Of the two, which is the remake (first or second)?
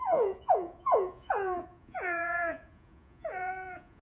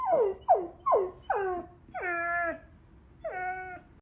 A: first